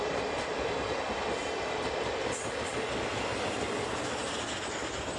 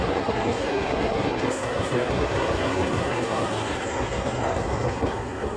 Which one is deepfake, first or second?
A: second